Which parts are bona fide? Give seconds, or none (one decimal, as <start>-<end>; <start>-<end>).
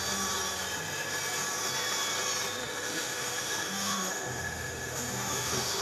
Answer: 0.0-2.6